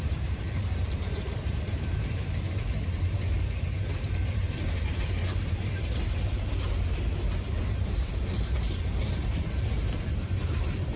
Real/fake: fake